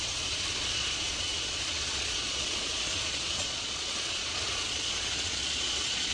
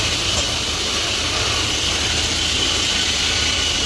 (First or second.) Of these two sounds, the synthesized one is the first